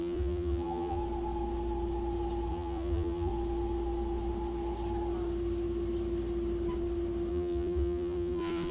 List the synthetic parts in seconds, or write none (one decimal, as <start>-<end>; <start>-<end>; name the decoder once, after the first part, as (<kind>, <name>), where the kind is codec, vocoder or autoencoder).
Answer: 0.0-1.0 (vocoder, BigVGAN v2); 2.5-3.3; 7.3-8.7